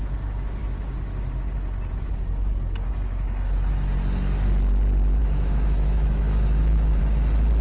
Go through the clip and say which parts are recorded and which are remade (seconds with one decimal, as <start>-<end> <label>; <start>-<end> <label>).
0.0-5.2 recorded; 5.2-7.0 remade; 7.0-7.6 recorded